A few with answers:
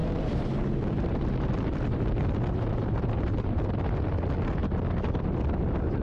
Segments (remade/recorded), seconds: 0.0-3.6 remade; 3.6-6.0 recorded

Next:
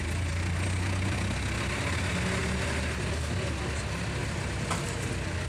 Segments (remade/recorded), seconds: 0.0-4.2 recorded; 4.2-5.1 remade; 5.1-5.5 recorded

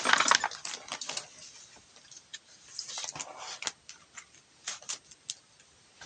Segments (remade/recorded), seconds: 0.0-2.3 recorded; 2.3-4.9 remade; 4.9-6.1 recorded

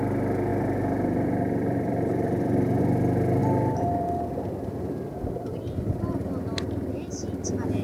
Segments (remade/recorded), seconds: 0.0-0.5 recorded; 0.5-2.8 remade; 2.8-3.4 recorded; 3.4-6.0 remade; 6.0-7.8 recorded

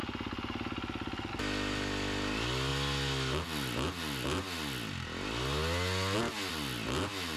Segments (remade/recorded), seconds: 0.0-7.4 recorded